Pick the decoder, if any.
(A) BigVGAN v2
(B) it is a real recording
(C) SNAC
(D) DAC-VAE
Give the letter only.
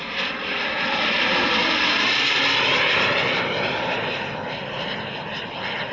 B